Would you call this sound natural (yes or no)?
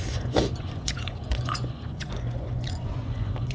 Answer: no